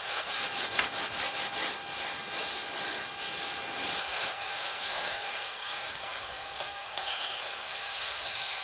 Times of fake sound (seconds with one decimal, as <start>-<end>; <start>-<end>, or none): 0.0-0.4; 4.0-8.6